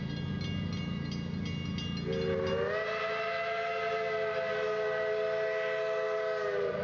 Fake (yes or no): no